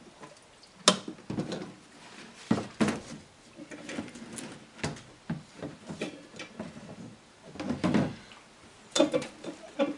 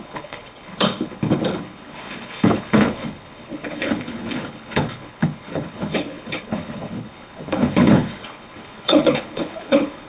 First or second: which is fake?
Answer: second